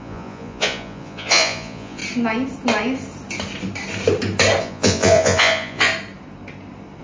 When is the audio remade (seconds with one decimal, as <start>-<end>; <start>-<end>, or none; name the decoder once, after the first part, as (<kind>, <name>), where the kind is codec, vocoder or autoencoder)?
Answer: 0.0-2.0 (vocoder, Vocos); 4.6-5.9